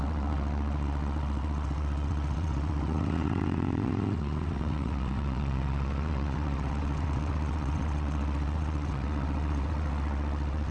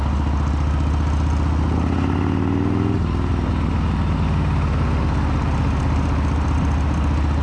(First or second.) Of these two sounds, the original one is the second